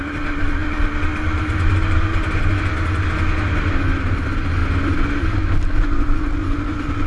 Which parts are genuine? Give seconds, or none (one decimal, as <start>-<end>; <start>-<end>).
0.0-7.1